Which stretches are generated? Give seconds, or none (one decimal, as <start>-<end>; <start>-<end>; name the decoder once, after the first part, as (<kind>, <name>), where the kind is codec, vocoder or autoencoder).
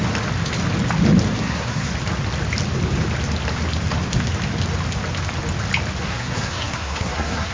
1.4-1.9 (codec, SNAC); 6.0-7.5